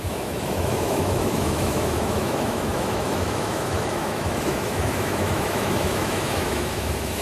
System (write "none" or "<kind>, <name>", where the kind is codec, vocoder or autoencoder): autoencoder, DAC-VAE